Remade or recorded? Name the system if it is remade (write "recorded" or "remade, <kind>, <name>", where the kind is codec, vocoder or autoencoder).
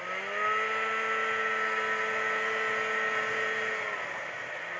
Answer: recorded